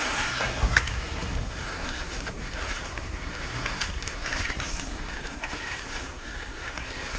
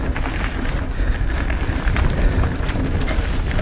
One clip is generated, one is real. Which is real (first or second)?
second